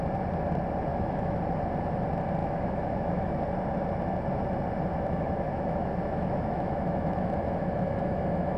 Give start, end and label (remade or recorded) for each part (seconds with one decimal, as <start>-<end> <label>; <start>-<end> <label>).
0.0-0.9 recorded; 0.9-1.4 remade; 1.4-2.4 recorded; 2.4-3.3 remade; 3.3-4.9 recorded; 4.9-8.6 remade